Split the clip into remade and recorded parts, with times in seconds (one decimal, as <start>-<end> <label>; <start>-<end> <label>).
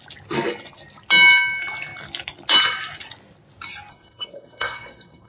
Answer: 0.0-3.9 recorded; 3.9-5.3 remade